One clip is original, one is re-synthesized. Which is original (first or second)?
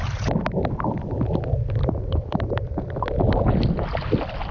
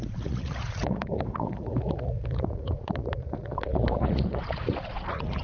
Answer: first